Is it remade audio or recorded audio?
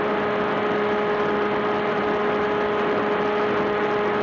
recorded